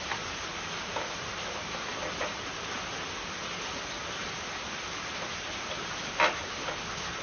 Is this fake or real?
real